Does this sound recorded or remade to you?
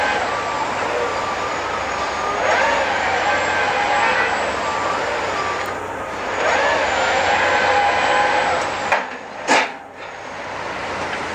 recorded